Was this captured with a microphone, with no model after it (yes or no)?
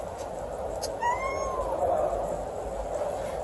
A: yes